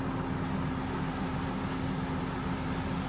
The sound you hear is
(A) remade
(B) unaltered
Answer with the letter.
B